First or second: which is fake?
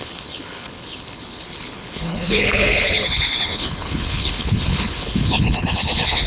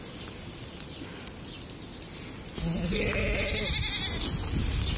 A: first